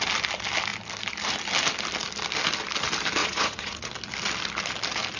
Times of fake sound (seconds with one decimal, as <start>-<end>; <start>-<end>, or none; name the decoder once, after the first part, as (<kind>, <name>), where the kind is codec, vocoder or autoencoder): 3.2-3.9 (vocoder, Vocos)